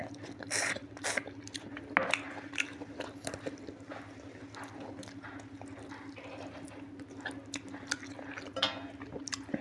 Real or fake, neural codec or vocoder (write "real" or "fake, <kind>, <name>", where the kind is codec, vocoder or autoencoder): real